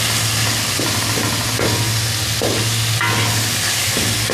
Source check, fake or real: real